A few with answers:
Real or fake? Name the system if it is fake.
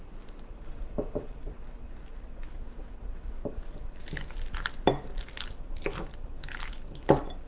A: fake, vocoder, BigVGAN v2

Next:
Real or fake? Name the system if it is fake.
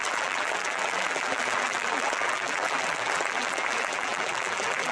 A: fake, vocoder, BigVGAN v2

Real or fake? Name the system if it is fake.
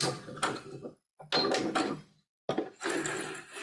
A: real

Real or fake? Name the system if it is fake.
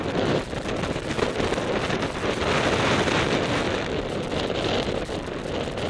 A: real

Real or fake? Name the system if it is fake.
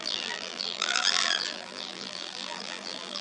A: fake, vocoder, BigVGAN v2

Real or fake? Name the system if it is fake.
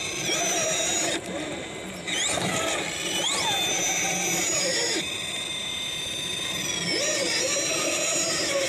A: real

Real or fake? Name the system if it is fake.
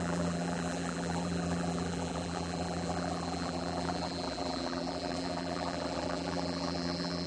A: fake, vocoder, BigVGAN v2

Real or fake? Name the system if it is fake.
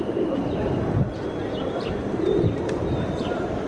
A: fake, vocoder, BigVGAN v2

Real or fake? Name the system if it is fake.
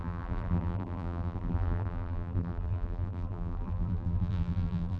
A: fake, vocoder, BigVGAN v2